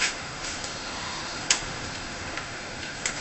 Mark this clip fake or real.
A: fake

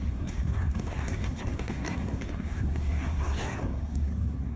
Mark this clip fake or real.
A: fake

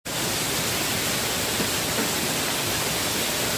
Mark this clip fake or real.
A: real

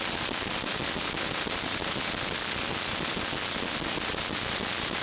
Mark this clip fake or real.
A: real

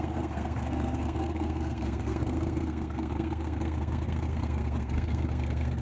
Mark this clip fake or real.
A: fake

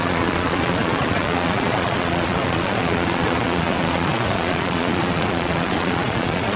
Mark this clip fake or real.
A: fake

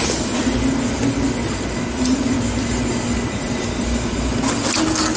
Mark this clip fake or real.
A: real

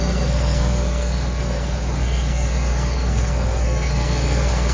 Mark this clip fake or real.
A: fake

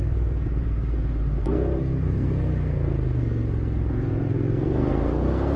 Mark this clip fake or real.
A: fake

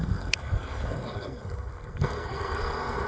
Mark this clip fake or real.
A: fake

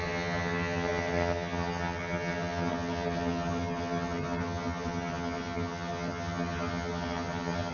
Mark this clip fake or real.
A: fake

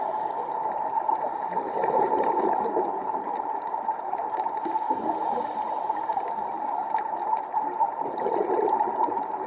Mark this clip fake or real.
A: fake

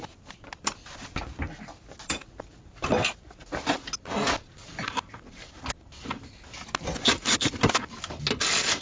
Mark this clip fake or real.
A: real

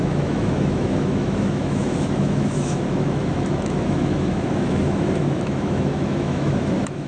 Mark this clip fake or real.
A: fake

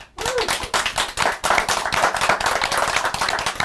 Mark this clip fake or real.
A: real